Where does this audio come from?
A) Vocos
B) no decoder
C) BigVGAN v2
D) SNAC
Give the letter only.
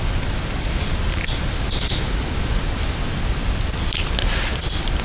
B